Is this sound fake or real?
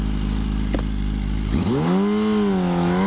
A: real